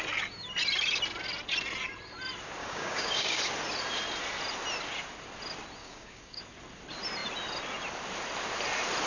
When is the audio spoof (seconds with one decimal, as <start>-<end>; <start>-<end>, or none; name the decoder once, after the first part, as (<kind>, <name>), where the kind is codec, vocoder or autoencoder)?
2.6-3.4 (codec, DAC); 5.8-6.4